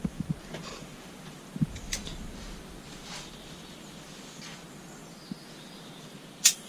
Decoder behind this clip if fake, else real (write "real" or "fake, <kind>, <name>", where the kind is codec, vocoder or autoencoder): real